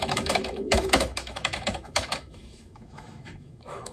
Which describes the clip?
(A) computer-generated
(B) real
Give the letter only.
A